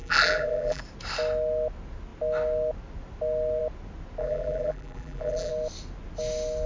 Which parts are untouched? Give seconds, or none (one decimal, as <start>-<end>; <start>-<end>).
0.8-4.2; 5.5-6.7